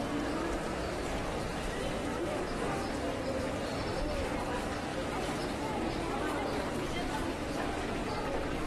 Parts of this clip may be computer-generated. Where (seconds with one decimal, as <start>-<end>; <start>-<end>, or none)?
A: 1.5-8.7